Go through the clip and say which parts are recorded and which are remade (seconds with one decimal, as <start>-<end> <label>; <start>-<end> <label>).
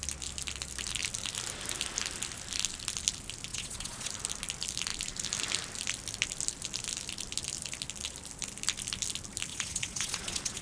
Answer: 0.0-3.5 recorded; 3.5-4.1 remade; 4.1-9.5 recorded; 9.5-10.6 remade